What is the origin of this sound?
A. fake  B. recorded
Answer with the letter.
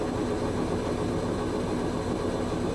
B